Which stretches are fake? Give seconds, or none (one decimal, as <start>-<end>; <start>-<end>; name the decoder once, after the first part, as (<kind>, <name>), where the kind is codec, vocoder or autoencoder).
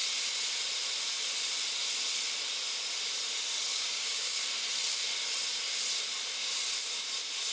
3.7-4.4 (codec, DAC)